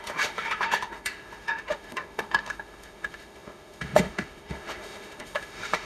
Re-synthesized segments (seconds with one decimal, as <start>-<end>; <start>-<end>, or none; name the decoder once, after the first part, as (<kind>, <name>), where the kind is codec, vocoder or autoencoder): 0.0-5.9 (autoencoder, DAC-VAE)